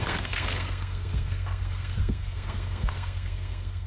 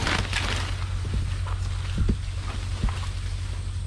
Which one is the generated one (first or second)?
first